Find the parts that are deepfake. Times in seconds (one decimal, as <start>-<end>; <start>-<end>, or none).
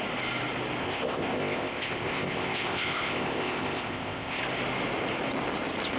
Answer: 0.8-4.4